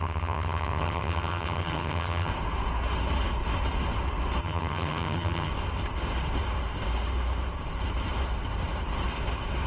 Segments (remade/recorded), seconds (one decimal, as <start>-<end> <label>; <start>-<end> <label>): 0.0-2.3 remade; 2.3-4.4 recorded; 4.4-5.5 remade; 5.5-9.7 recorded